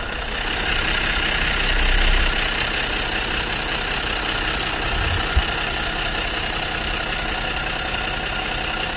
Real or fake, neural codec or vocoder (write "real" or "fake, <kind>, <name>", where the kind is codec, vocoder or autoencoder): real